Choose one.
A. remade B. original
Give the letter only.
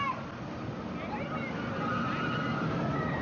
B